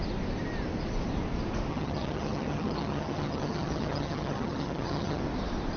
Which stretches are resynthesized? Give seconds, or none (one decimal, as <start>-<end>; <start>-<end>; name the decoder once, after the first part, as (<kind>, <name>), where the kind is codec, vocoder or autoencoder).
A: 1.7-5.2 (vocoder, HiFi-GAN)